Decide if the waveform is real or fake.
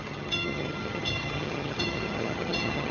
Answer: fake